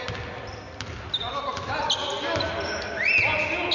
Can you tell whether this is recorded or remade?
recorded